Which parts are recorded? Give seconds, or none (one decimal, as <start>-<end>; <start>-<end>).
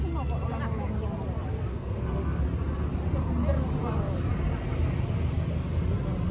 0.0-1.7; 2.4-6.3